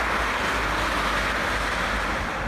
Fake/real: real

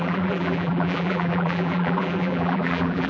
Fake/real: fake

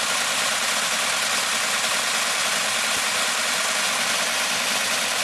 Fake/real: real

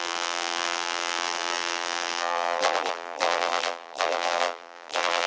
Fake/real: fake